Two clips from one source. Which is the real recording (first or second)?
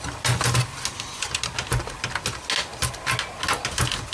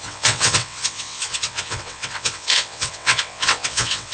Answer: first